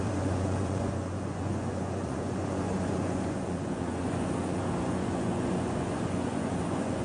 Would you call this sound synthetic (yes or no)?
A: yes